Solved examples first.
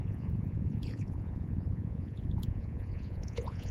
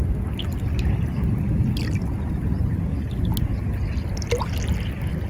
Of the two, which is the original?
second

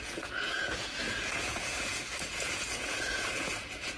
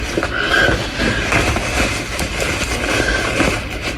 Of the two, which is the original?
second